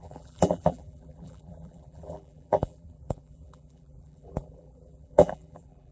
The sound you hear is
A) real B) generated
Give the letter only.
B